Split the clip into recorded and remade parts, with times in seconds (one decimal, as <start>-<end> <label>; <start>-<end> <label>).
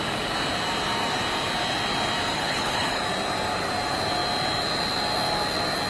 0.0-2.3 recorded; 2.3-3.0 remade; 3.0-5.9 recorded